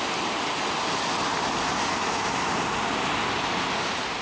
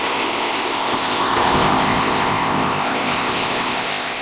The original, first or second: first